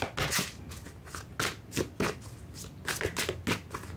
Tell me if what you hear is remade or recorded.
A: recorded